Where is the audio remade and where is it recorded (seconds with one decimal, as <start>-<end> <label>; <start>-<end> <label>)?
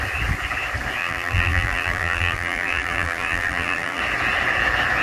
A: 0.0-1.0 recorded; 1.0-4.0 remade; 4.0-5.0 recorded